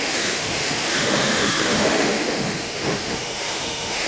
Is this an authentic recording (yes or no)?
no